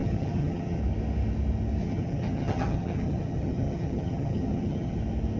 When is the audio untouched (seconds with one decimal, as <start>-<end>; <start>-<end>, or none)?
0.8-1.8; 5.0-5.4